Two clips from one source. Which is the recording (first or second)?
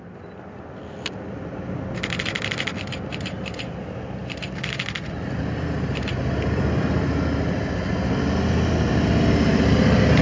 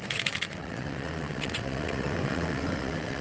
first